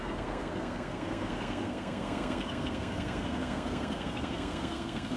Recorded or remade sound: remade